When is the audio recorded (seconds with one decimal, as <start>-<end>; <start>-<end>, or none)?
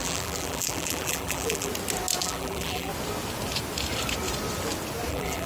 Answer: 1.7-2.2; 2.9-5.1